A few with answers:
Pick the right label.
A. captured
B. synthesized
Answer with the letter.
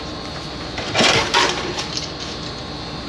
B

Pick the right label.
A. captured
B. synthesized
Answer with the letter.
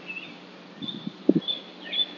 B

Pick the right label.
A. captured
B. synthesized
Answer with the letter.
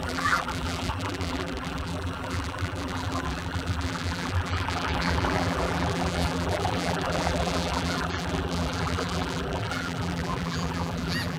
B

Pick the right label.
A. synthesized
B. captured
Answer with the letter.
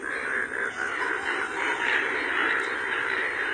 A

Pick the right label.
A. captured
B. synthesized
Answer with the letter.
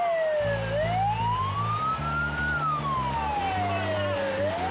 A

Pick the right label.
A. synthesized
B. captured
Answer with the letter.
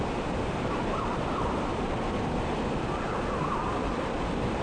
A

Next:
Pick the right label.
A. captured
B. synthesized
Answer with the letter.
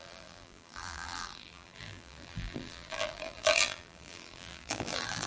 B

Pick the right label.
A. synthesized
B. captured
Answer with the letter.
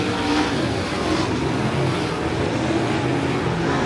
B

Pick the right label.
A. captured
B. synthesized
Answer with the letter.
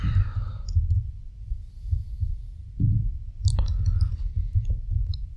A